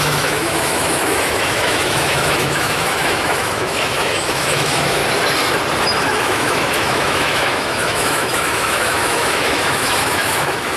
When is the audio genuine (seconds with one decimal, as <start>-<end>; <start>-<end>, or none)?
5.0-6.2